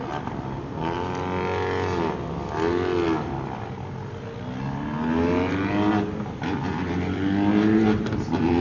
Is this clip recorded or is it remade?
recorded